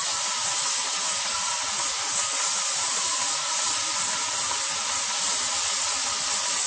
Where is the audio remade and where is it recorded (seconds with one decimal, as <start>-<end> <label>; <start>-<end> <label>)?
0.0-6.7 recorded